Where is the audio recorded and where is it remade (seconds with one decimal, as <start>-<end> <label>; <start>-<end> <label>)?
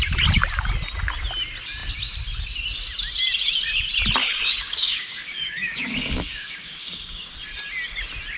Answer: 0.0-4.2 recorded; 4.2-7.3 remade; 7.3-8.4 recorded